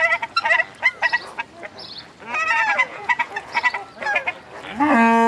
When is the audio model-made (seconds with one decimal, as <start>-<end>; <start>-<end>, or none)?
2.8-3.6